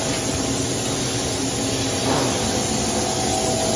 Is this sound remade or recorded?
recorded